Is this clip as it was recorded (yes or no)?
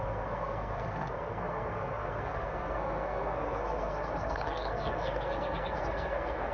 no